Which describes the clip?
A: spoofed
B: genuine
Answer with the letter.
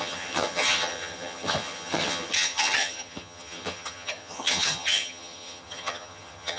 A